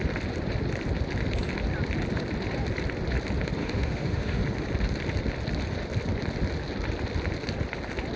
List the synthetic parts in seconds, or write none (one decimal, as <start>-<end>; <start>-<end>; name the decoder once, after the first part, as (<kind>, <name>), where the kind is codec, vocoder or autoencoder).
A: 3.6-4.4 (autoencoder, DAC-VAE)